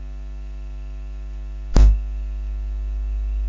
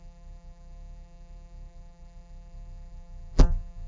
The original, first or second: first